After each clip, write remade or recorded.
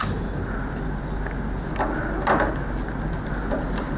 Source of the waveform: recorded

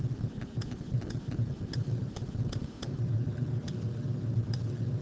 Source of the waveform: recorded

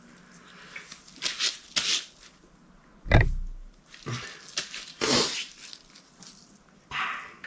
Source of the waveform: recorded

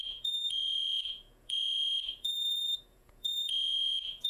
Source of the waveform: remade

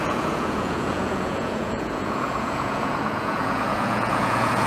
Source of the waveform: remade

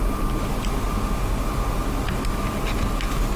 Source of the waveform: recorded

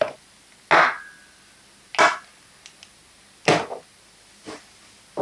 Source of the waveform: recorded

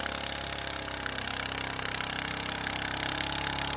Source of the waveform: recorded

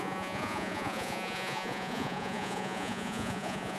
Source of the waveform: remade